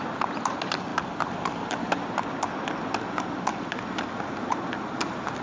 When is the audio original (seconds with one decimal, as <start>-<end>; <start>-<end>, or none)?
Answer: 0.0-5.4